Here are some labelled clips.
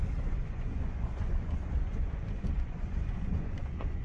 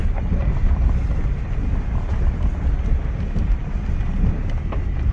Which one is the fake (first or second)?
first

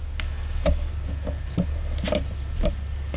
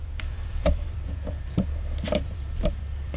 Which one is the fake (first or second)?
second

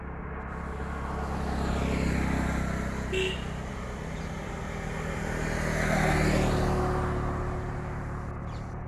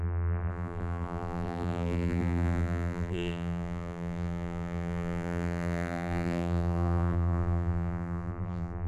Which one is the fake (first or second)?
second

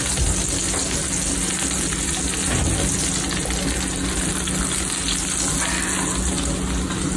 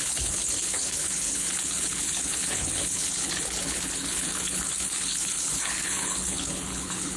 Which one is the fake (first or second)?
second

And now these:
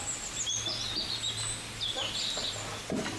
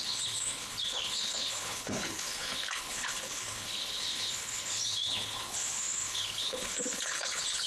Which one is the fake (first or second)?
second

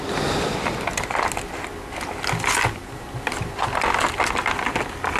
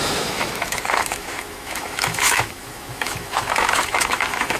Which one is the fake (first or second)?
second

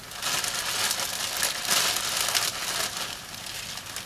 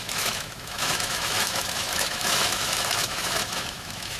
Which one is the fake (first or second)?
second